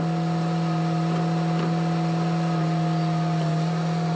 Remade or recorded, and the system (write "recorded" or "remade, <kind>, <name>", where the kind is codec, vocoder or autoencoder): recorded